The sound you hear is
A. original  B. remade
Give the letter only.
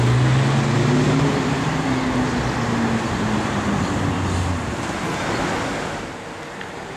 A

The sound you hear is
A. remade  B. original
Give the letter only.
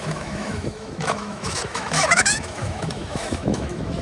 A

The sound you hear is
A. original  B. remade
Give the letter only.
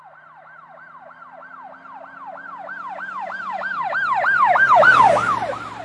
A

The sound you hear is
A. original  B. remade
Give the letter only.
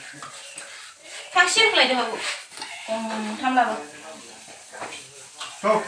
A